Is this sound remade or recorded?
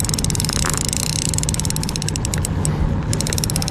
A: recorded